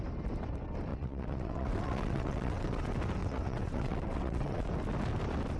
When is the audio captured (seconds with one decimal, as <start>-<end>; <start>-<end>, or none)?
0.0-0.9; 2.8-3.2; 4.7-5.6